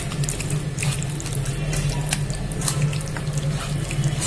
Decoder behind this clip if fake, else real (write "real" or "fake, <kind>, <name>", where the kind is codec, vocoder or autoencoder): real